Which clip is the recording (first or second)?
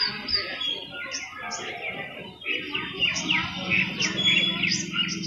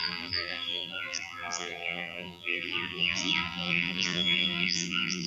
first